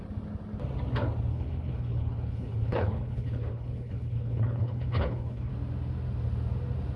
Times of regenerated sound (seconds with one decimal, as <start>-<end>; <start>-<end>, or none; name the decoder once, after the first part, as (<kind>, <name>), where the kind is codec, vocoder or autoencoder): 1.3-5.5 (codec, HILCodec)